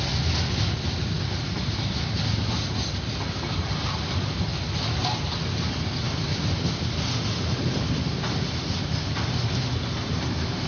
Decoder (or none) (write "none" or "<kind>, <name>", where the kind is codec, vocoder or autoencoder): none